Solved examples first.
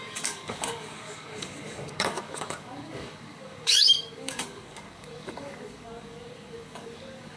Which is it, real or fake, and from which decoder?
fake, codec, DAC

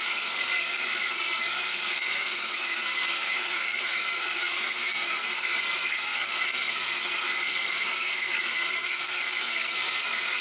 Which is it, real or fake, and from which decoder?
fake, codec, SNAC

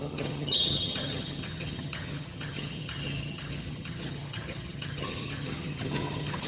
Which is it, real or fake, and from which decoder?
fake, vocoder, HiFi-GAN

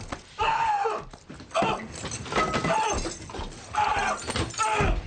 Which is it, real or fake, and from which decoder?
real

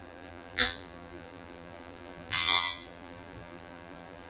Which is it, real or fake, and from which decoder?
fake, vocoder, BigVGAN v2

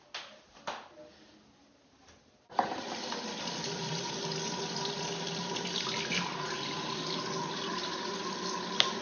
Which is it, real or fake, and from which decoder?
real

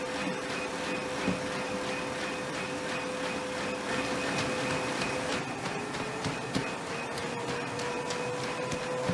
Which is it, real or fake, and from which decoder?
real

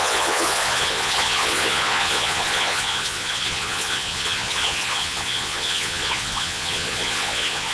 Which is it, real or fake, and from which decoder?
fake, vocoder, Vocos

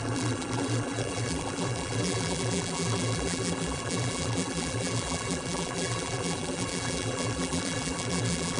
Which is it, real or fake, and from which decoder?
fake, vocoder, BigVGAN v2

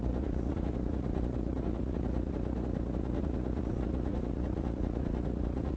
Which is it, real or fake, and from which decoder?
fake, vocoder, Vocos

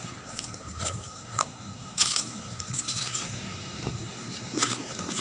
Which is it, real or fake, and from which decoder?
fake, codec, SNAC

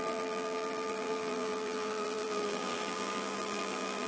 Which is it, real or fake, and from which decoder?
fake, vocoder, BigVGAN v2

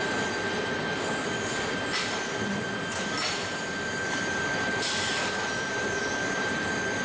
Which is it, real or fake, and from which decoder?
fake, vocoder, BigVGAN v2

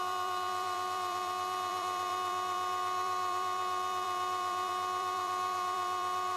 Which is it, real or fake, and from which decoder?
fake, vocoder, BigVGAN v2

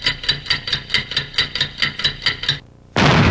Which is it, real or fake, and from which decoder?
real